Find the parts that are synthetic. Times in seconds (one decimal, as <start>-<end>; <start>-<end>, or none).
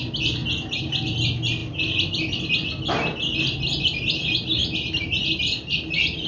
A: none